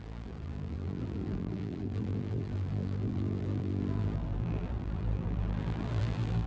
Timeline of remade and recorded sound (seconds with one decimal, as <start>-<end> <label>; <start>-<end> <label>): 0.0-6.5 remade